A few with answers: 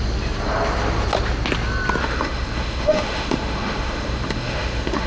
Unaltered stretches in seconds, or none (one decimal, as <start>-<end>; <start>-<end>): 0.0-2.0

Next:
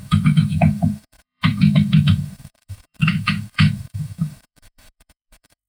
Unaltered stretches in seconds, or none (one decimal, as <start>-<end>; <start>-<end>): none

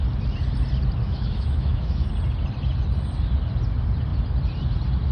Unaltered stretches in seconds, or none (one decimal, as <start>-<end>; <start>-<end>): 0.0-1.0; 2.1-5.1

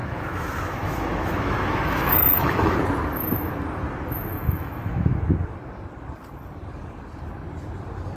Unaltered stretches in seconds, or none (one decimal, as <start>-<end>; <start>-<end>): 2.8-4.3; 5.2-8.2

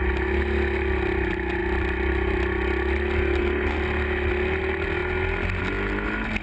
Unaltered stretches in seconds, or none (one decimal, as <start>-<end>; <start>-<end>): 0.0-6.4

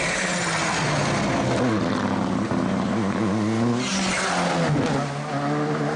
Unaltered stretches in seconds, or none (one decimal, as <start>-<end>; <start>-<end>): 0.0-6.0